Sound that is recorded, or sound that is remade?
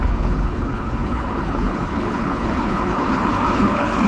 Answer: remade